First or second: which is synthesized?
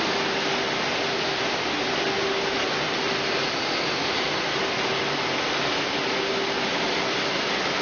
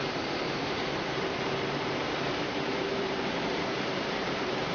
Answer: second